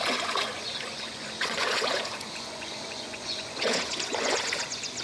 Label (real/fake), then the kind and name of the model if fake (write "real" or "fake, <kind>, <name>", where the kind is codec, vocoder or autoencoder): fake, vocoder, Vocos